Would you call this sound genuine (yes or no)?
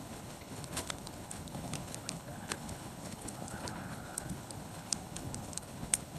no